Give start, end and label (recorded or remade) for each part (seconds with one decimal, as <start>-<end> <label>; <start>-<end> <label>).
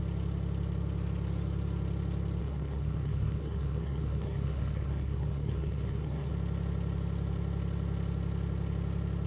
0.0-2.4 recorded; 2.4-6.3 remade; 6.3-9.3 recorded